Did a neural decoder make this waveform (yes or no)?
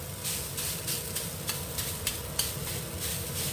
no